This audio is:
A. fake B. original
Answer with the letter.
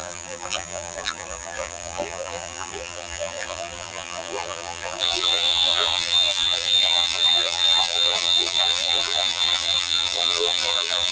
A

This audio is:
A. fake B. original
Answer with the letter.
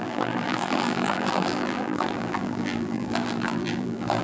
A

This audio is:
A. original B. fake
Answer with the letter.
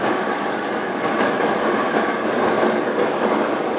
B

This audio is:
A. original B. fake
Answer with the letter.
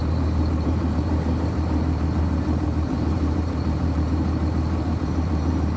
B